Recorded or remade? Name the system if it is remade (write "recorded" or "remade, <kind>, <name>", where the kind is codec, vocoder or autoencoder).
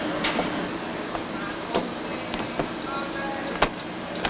recorded